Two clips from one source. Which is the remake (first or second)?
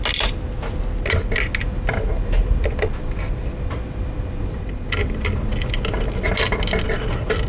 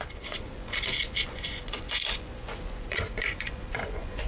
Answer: second